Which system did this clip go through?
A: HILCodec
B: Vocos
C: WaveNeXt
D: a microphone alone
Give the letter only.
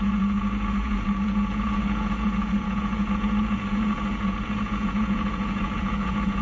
B